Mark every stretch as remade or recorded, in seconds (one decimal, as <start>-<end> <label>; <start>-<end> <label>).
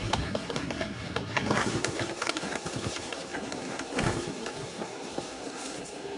0.0-6.2 remade